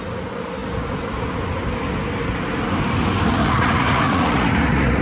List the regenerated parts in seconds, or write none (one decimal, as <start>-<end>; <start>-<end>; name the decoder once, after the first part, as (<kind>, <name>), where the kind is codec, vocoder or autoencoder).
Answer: 3.4-5.0 (vocoder, Vocos)